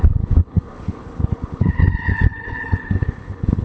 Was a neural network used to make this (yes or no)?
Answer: yes